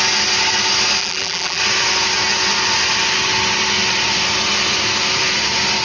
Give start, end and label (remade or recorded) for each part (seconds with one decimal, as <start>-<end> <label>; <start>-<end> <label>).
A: 0.0-1.0 recorded; 1.0-1.6 remade; 1.6-5.8 recorded